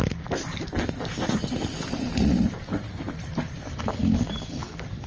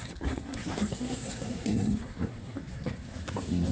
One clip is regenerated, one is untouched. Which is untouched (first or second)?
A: first